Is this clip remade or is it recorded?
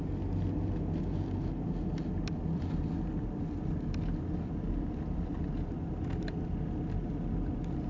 recorded